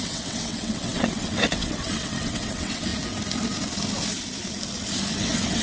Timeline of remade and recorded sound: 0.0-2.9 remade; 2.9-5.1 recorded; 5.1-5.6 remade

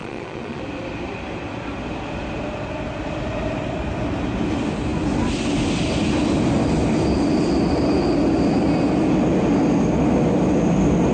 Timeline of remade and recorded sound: 0.0-0.6 remade; 0.6-11.1 recorded

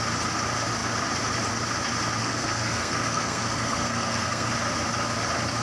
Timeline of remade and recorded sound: 0.0-2.2 recorded; 2.2-4.5 remade; 4.5-5.6 recorded

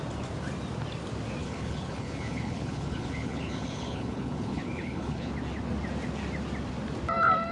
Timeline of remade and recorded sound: 0.0-1.4 recorded; 1.4-5.3 remade; 5.3-7.5 recorded

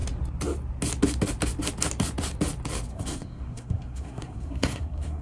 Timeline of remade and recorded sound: 0.0-2.9 recorded; 2.9-5.2 remade

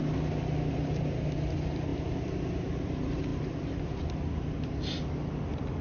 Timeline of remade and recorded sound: 0.0-5.8 recorded

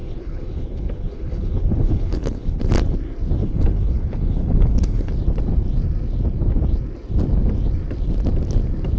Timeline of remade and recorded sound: 0.0-2.6 remade; 2.6-3.4 recorded; 3.4-5.1 remade; 5.1-9.0 recorded